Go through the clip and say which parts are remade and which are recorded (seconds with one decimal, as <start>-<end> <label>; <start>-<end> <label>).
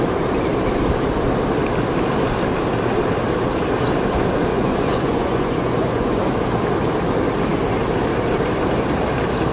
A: 0.0-4.5 recorded; 4.5-6.2 remade; 6.2-9.5 recorded